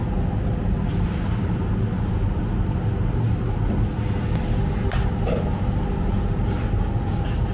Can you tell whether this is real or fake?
real